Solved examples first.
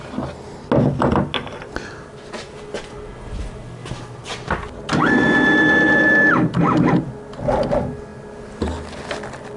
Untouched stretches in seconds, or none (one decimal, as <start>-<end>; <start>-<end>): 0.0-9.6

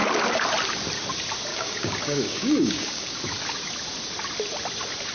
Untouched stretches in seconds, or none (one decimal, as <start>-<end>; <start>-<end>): 0.0-1.5; 3.1-5.1

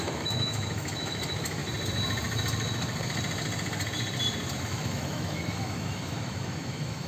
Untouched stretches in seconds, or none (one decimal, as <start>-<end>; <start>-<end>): 1.6-4.6

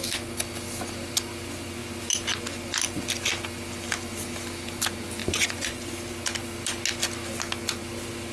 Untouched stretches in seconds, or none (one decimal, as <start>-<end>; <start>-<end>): 0.0-5.2; 5.8-8.3

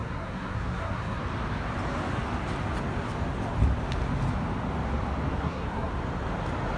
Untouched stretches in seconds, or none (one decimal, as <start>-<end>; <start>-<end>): 1.2-5.3; 5.9-6.8

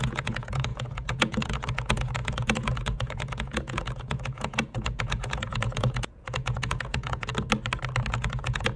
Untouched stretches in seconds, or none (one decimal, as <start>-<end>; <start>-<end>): 7.3-8.1